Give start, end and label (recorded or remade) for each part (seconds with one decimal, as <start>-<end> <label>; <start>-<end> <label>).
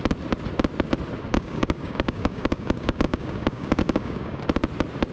0.0-1.3 recorded; 1.3-4.4 remade; 4.4-5.1 recorded